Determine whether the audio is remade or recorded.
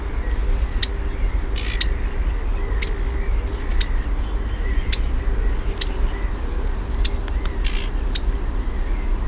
recorded